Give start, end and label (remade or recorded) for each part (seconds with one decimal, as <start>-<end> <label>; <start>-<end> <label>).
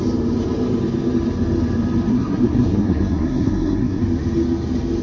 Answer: 0.0-2.1 recorded; 2.1-4.0 remade; 4.0-5.0 recorded